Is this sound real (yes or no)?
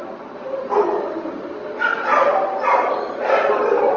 yes